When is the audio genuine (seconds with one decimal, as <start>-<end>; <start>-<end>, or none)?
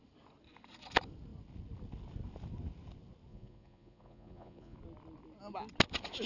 0.0-3.3; 4.8-6.3